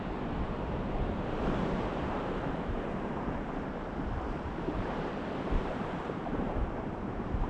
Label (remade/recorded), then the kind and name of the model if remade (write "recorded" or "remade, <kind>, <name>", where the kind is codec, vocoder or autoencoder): remade, vocoder, BigVGAN v2